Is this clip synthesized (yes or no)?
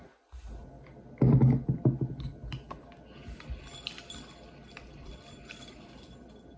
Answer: no